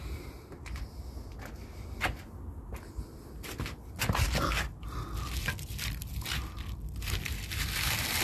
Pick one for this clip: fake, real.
real